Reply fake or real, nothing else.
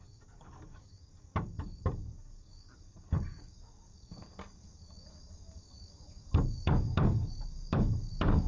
fake